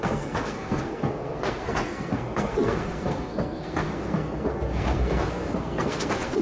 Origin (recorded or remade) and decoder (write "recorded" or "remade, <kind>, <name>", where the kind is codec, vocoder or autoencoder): remade, codec, SNAC